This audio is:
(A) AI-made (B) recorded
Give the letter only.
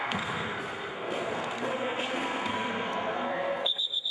A